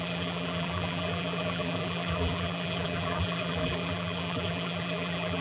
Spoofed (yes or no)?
yes